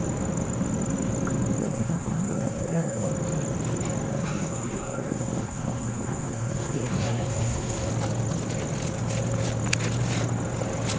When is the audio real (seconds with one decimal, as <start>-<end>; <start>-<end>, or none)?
0.0-1.6; 3.1-4.1; 7.9-11.0